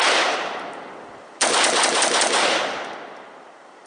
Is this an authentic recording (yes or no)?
yes